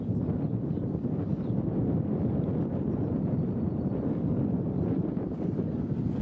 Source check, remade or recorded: remade